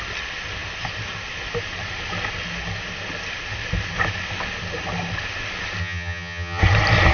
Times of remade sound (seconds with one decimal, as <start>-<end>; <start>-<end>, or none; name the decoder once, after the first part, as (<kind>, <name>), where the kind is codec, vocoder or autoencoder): 5.8-6.6 (vocoder, HiFi-GAN)

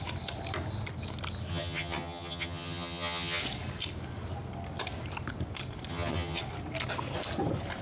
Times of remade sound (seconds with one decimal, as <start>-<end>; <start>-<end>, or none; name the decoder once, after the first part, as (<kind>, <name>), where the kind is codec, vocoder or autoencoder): 1.5-3.4 (vocoder, HiFi-GAN); 5.9-6.4

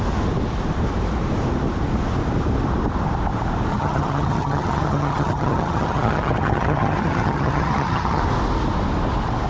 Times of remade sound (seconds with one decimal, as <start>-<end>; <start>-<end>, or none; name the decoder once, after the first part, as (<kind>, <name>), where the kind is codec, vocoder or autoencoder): 3.7-8.2 (vocoder, HiFi-GAN)

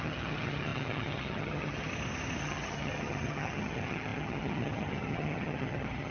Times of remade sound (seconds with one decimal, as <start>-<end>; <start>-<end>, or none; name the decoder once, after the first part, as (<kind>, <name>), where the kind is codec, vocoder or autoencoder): 0.0-1.9 (vocoder, HiFi-GAN); 2.4-6.1

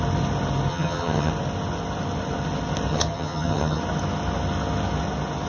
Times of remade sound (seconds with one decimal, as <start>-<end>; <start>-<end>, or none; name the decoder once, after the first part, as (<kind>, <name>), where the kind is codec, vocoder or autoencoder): 0.7-1.3 (vocoder, HiFi-GAN); 2.9-3.8

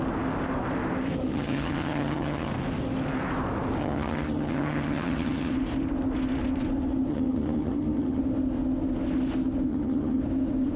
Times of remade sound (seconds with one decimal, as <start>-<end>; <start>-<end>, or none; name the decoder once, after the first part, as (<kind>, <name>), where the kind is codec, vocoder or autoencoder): 1.3-2.5 (vocoder, HiFi-GAN); 3.8-5.5; 7.1-8.2; 9.7-10.2

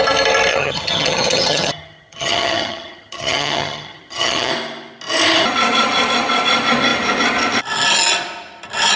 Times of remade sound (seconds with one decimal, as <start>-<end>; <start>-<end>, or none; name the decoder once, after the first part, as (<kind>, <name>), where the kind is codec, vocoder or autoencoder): 0.5-4.5 (vocoder, HiFi-GAN)